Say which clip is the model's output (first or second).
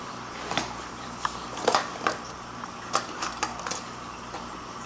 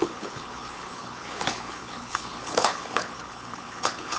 second